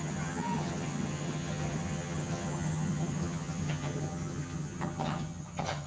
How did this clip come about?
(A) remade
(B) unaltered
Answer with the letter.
A